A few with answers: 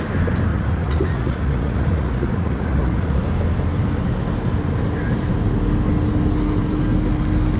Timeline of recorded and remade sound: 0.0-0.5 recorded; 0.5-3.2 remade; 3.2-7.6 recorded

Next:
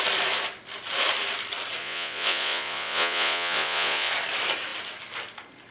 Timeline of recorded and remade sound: 0.0-1.8 recorded; 1.8-4.1 remade; 4.1-5.7 recorded